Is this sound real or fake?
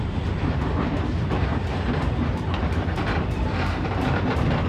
fake